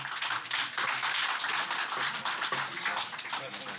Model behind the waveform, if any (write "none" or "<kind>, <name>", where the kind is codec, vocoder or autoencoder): none